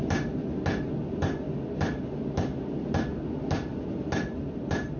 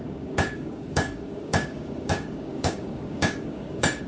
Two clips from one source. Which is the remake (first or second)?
second